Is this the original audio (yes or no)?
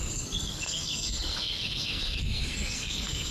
no